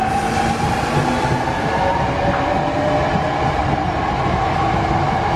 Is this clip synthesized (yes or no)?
no